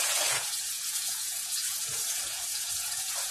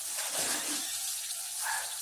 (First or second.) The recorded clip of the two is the second